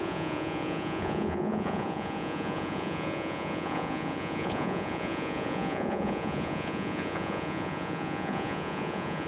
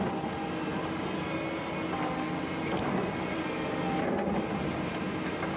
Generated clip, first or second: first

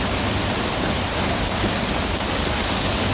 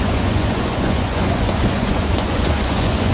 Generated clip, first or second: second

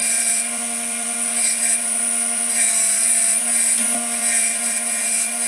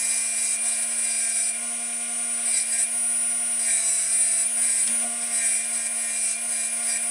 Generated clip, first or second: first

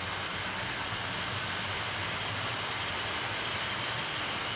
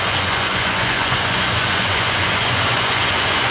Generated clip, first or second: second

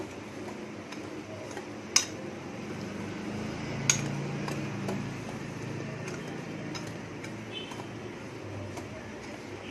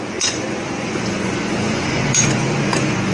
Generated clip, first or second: second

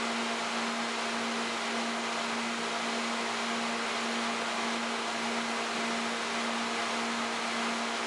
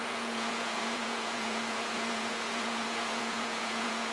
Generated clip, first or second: second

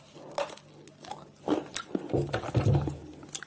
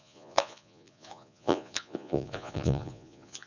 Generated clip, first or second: second